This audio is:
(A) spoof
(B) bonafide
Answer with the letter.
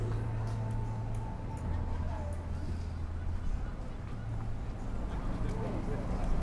B